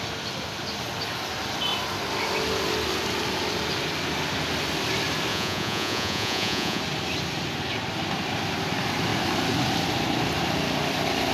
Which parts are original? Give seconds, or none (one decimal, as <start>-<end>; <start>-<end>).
0.0-5.3; 6.8-11.3

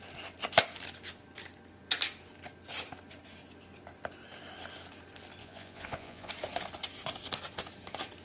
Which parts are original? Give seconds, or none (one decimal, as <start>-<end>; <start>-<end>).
0.0-5.4; 6.3-8.2

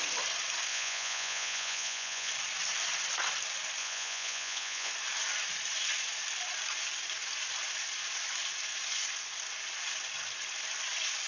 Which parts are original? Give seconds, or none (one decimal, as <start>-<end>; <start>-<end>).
0.0-0.7; 2.3-3.8; 4.9-11.3

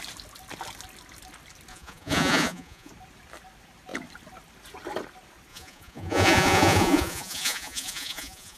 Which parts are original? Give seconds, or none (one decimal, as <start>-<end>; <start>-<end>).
0.0-1.7; 2.9-5.5

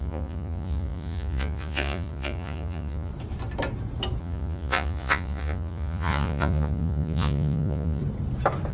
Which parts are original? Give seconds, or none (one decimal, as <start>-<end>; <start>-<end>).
3.1-4.2; 8.0-8.7